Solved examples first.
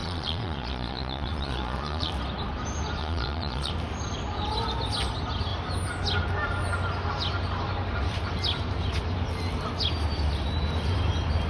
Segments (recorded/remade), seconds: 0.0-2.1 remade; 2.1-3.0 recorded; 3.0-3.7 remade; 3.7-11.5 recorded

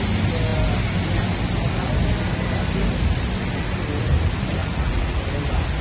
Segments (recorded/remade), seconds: 0.0-4.6 recorded; 4.6-5.2 remade; 5.2-5.8 recorded

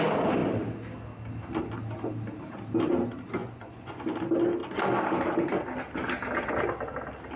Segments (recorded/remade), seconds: 0.0-3.4 recorded; 3.4-4.0 remade; 4.0-7.4 recorded